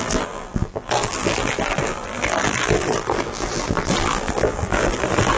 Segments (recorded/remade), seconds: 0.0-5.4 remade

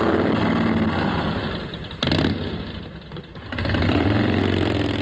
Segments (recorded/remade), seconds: 0.0-1.4 recorded; 1.4-4.4 remade; 4.4-5.0 recorded

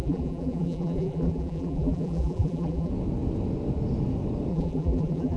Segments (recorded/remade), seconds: 0.0-2.9 remade; 2.9-4.5 recorded; 4.5-5.4 remade

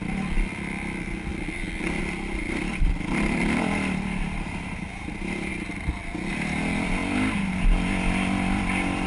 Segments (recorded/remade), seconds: 0.0-5.5 remade; 5.5-6.3 recorded; 6.3-7.0 remade; 7.0-7.8 recorded; 7.8-9.1 remade

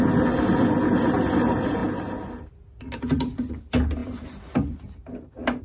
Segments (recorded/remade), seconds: 0.0-5.6 recorded

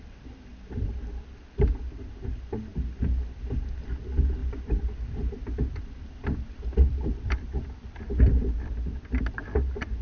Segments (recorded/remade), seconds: 0.0-4.4 recorded; 4.4-8.2 remade; 8.2-10.0 recorded